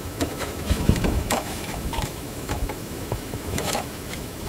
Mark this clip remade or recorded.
remade